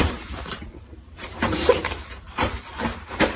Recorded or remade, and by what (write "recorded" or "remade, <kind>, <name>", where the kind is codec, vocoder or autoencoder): remade, vocoder, BigVGAN v2